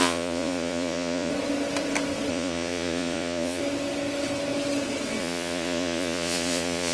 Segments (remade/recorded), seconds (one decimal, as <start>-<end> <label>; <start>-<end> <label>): 0.0-1.3 remade; 1.3-2.3 recorded; 2.3-3.6 remade; 3.6-5.2 recorded; 5.2-6.9 remade

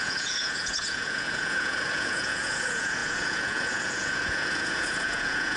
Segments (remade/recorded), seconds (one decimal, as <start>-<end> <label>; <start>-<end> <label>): 0.0-5.6 remade

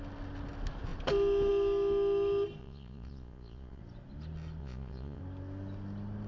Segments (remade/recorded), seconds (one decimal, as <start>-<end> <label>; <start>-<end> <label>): 0.0-2.6 recorded; 2.6-3.8 remade; 3.8-4.6 recorded; 4.6-5.2 remade; 5.2-6.3 recorded